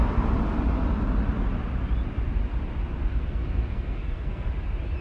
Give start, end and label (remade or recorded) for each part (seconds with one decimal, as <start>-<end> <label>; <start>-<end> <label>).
0.0-3.1 recorded; 3.1-4.5 remade; 4.5-5.0 recorded